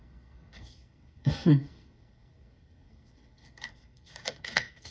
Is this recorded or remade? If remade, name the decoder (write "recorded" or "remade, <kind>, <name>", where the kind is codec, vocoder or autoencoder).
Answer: remade, codec, SNAC